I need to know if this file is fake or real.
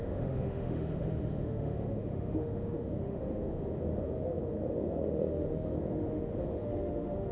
fake